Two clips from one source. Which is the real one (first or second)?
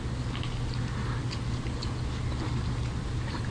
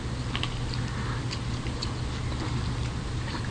first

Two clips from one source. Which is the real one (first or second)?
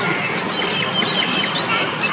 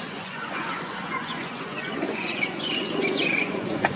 first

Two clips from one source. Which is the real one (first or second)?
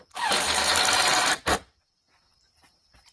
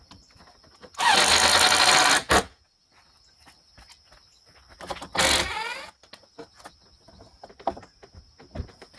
second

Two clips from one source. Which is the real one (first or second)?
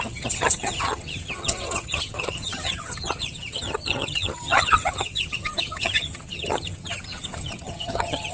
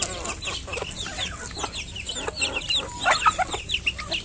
second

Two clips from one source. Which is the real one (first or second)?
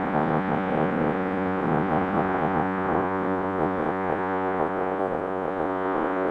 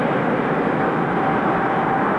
second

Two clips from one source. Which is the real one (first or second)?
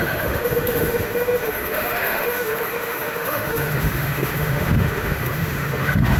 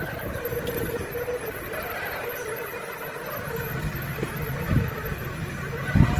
second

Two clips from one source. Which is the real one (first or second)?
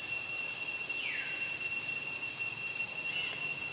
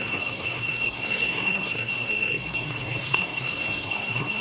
first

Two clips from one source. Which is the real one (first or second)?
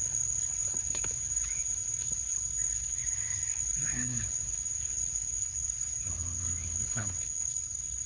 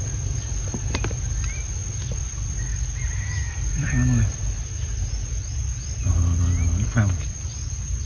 second